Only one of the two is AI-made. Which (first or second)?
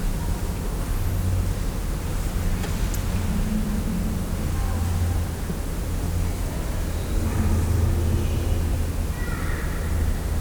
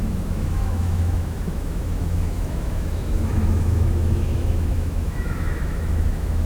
second